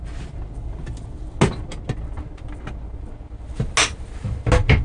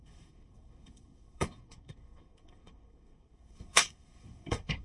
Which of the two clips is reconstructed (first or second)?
second